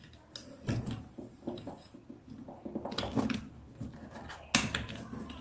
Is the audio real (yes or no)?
yes